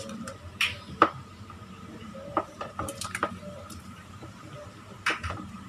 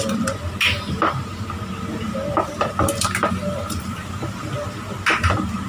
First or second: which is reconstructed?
first